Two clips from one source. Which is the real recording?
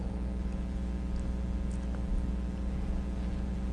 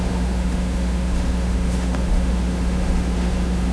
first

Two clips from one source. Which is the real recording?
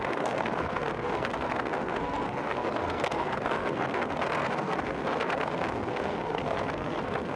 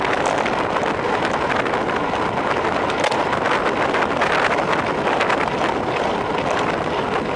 second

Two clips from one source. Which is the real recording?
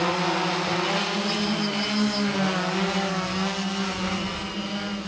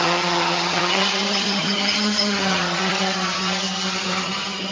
first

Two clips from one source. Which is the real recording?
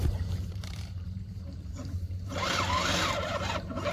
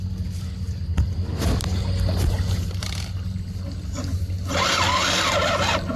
second